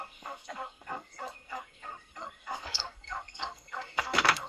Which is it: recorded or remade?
remade